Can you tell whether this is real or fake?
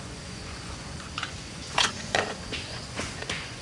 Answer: fake